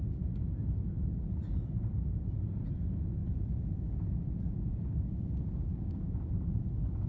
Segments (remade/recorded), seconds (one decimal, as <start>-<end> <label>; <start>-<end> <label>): 0.0-4.7 recorded; 4.7-5.3 remade; 5.3-5.7 recorded; 5.7-6.2 remade; 6.2-7.1 recorded